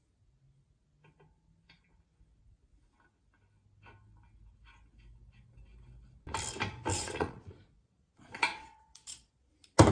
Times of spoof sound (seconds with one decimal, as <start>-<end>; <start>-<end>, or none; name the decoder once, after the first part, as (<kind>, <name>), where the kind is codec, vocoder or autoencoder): 6.9-9.5 (vocoder, Vocos)